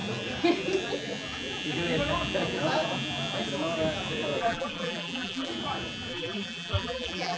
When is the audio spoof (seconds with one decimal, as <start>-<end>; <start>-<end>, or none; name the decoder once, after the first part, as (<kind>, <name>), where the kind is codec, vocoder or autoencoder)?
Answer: 4.4-5.5 (vocoder, BigVGAN v2); 6.1-7.4